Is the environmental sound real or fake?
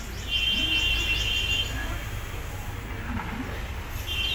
real